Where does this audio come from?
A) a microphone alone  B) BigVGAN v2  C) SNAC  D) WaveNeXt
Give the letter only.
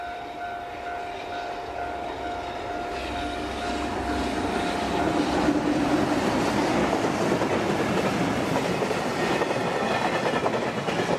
A